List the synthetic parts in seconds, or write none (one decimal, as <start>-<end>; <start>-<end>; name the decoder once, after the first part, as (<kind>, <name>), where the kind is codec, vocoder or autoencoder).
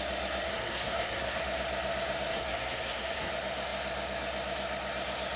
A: 0.5-1.4 (codec, SNAC); 2.3-3.3